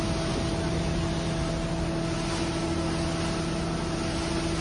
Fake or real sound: real